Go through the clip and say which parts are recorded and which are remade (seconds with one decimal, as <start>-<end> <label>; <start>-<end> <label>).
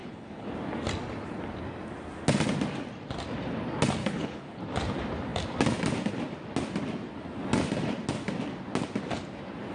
0.0-0.5 remade; 0.5-4.0 recorded; 4.0-4.6 remade; 4.6-9.7 recorded